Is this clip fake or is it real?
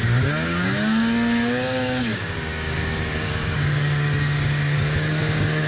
fake